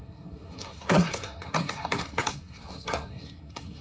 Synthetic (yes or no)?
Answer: yes